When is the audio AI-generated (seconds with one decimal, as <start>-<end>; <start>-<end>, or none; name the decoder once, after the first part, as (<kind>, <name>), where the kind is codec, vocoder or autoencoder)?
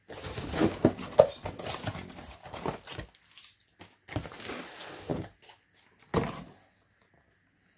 none